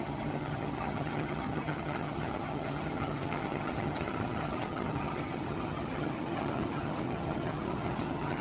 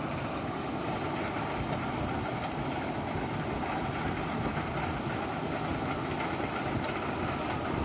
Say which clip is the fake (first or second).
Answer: first